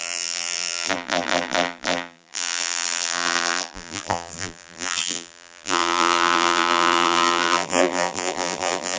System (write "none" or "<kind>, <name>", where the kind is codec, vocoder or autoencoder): vocoder, BigVGAN v2